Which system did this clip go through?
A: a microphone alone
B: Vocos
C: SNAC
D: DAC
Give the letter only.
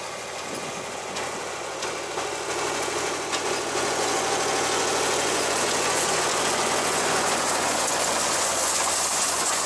B